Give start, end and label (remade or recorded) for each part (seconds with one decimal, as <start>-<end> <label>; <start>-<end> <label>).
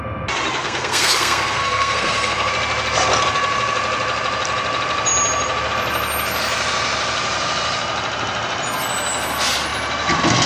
0.0-0.6 recorded; 0.6-2.5 remade; 2.5-10.5 recorded